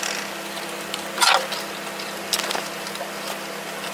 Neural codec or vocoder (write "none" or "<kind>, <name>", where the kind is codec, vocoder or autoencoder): none